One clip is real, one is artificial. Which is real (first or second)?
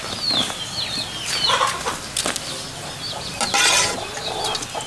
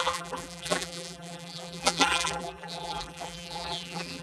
first